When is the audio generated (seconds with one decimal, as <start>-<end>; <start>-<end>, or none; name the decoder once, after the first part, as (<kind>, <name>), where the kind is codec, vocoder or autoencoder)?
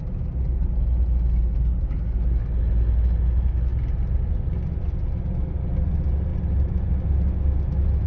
none